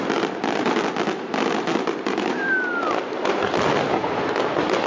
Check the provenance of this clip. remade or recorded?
recorded